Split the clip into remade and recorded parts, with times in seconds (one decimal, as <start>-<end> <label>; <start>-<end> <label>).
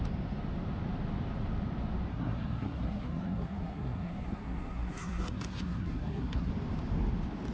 0.0-2.1 recorded; 2.1-6.5 remade; 6.5-7.5 recorded